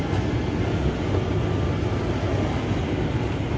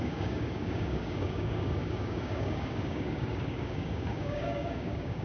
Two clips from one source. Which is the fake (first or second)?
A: second